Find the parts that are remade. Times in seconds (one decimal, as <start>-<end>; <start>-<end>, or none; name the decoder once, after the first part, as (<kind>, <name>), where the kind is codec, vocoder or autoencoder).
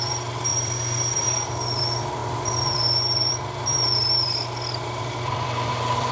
0.5-1.5 (vocoder, BigVGAN v2)